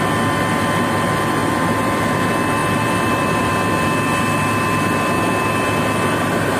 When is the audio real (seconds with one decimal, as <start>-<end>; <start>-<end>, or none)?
0.0-1.4; 2.2-2.6; 3.5-6.6